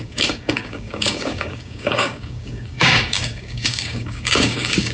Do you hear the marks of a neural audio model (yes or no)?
yes